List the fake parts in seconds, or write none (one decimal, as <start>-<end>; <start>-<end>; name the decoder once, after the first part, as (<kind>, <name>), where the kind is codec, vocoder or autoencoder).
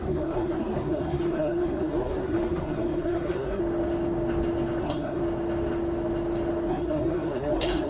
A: 0.0-3.6 (codec, SNAC); 4.8-5.2; 6.7-7.9